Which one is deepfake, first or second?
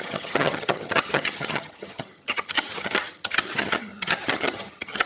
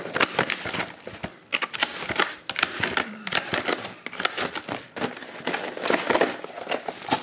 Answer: first